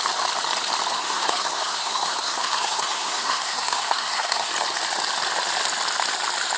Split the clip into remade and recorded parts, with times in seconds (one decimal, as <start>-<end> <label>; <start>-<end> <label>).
0.0-0.9 recorded; 0.9-4.5 remade; 4.5-6.6 recorded